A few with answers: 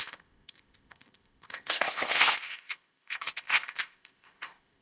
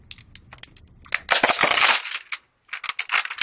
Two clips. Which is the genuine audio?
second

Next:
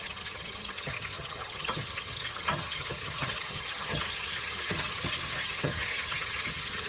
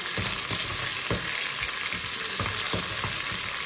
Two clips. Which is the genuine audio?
second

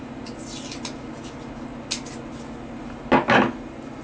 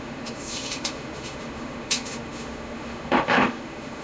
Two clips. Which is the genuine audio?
first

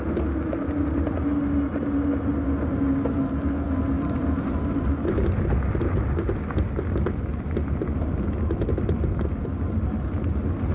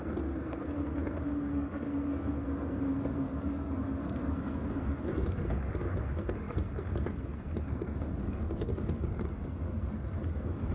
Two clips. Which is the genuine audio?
first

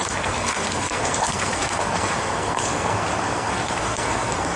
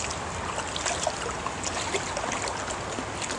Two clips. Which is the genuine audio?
second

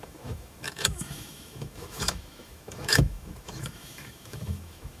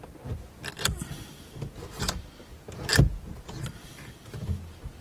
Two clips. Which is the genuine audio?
second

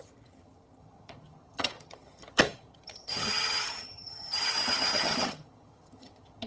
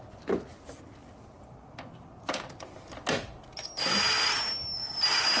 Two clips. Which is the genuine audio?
second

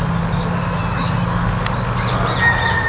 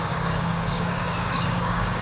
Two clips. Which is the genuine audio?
first